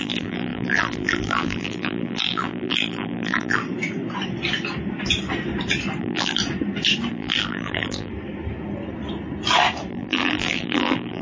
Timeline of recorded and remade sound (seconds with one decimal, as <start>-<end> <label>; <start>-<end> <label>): 0.0-3.6 remade; 3.6-6.0 recorded; 6.0-6.4 remade; 6.4-7.1 recorded; 7.1-8.1 remade; 8.1-9.9 recorded; 9.9-11.2 remade